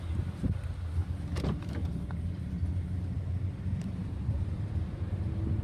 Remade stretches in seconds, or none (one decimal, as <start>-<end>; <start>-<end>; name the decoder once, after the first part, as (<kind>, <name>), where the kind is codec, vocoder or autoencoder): 1.0-4.4 (vocoder, BigVGAN v2)